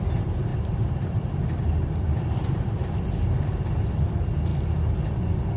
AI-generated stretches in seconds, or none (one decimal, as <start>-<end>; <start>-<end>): 0.0-4.5

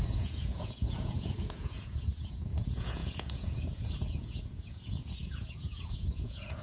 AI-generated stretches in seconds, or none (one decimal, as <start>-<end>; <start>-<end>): 0.0-6.6

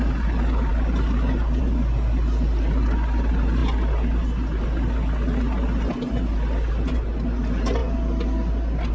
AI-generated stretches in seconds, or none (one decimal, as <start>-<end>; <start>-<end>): none